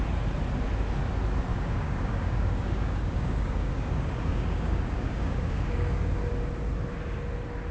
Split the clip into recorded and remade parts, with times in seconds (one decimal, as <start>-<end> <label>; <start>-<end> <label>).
0.0-1.5 recorded; 1.5-6.1 remade; 6.1-7.7 recorded